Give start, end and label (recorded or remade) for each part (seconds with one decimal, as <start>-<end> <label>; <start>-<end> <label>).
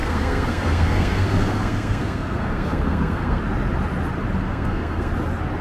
0.0-3.4 remade; 3.4-4.4 recorded; 4.4-5.1 remade; 5.1-5.6 recorded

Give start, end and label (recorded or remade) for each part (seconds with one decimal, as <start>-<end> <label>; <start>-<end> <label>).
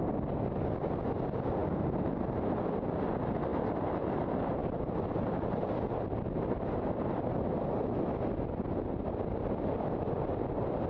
0.0-4.6 recorded; 4.6-7.0 remade; 7.0-10.9 recorded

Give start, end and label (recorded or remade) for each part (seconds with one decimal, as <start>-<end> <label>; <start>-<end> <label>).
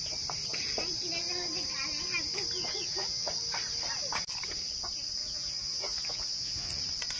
0.0-2.7 recorded; 2.7-3.3 remade; 3.3-5.2 recorded; 5.2-6.8 remade; 6.8-7.2 recorded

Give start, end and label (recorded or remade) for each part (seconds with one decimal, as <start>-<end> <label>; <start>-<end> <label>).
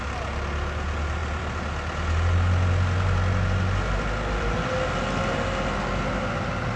0.0-6.8 recorded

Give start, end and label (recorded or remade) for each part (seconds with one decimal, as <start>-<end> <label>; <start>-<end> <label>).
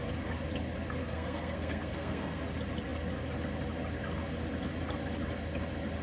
0.0-1.0 recorded; 1.0-2.4 remade; 2.4-6.0 recorded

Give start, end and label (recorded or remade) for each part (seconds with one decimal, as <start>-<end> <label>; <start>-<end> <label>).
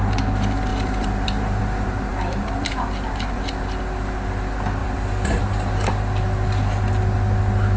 0.0-0.7 recorded; 0.7-1.6 remade; 1.6-2.1 recorded; 2.1-2.7 remade; 2.7-4.8 recorded; 4.8-5.4 remade; 5.4-7.8 recorded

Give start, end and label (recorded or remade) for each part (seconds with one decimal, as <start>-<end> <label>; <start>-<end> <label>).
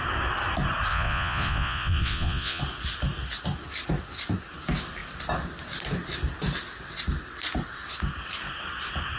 0.0-0.9 recorded; 0.9-2.6 remade; 2.6-9.2 recorded